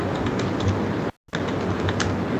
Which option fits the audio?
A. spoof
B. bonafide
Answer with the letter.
B